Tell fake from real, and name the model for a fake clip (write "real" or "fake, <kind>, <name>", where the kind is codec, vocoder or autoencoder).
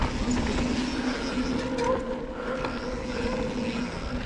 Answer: real